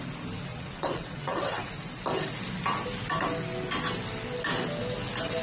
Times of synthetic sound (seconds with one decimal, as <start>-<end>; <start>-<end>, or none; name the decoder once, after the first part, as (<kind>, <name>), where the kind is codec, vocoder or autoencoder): 0.5-1.7 (vocoder, WaveNeXt)